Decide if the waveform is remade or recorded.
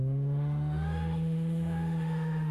remade